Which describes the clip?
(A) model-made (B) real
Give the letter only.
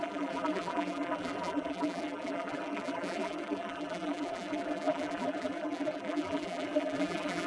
A